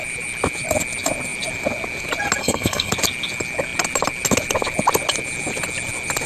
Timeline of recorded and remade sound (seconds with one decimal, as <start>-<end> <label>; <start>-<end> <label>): 0.0-2.4 recorded; 2.4-2.9 remade; 2.9-6.3 recorded